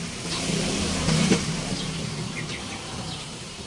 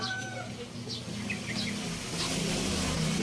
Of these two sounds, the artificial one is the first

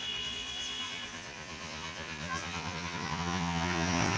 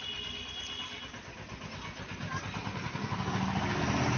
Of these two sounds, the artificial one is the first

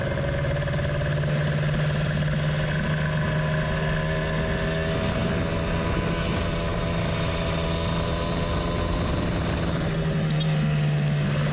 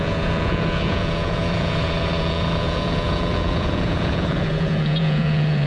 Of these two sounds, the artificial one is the second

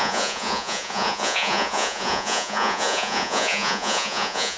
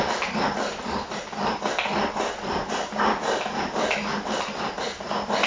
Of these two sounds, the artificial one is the first